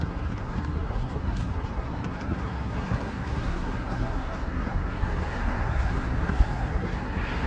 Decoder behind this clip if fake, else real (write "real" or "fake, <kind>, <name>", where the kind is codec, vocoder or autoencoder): fake, codec, SNAC